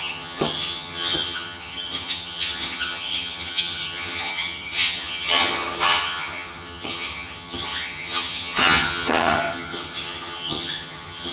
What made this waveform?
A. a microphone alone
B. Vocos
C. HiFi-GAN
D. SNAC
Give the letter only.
C